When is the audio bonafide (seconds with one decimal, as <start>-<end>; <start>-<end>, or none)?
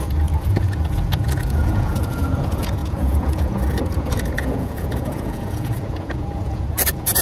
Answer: none